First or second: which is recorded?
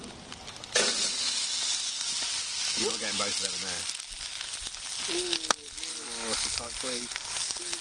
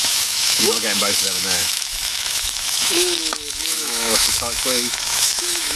first